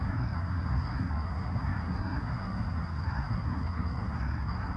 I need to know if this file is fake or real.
fake